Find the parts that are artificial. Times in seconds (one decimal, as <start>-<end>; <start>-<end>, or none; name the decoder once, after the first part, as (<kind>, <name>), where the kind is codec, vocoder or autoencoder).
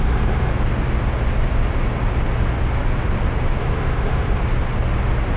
0.0-0.5 (autoencoder, DAC-VAE); 3.6-4.4